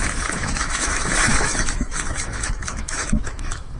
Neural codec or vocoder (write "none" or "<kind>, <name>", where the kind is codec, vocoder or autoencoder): autoencoder, DAC-VAE